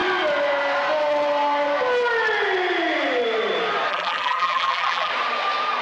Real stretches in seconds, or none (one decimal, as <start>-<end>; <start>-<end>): 0.0-3.9; 5.1-5.8